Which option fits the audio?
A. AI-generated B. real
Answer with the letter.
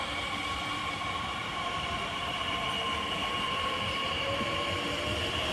A